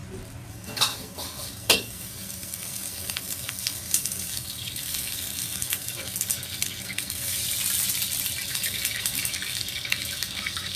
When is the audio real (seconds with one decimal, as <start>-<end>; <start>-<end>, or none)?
0.0-0.5; 7.4-8.5